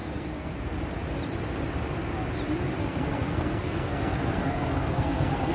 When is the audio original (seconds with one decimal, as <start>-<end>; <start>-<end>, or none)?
0.5-2.8